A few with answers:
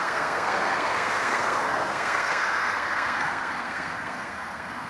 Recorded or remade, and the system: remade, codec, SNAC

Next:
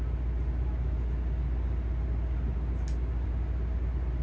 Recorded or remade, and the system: recorded